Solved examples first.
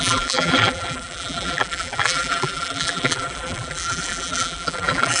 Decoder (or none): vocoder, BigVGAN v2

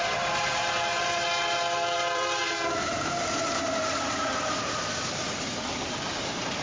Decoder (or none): vocoder, BigVGAN v2